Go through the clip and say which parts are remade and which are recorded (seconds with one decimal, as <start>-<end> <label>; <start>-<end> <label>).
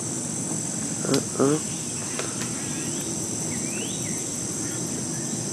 0.0-5.5 recorded